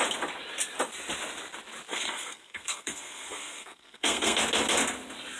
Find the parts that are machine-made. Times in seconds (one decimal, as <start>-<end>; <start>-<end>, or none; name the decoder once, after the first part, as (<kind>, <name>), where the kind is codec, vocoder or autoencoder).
1.9-4.4 (codec, SNAC)